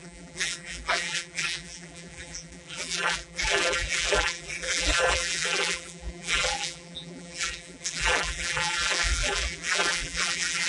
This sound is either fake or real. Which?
fake